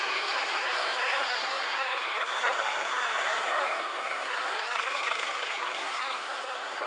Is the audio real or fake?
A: fake